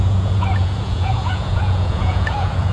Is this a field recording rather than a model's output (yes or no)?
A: no